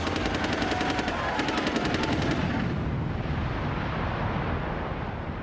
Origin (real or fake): real